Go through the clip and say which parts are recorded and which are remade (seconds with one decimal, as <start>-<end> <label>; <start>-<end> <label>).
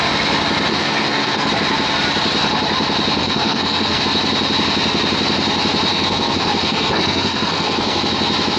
0.0-0.7 recorded; 0.7-1.5 remade; 1.5-3.2 recorded; 3.2-4.0 remade; 4.0-5.9 recorded; 5.9-8.0 remade; 8.0-8.6 recorded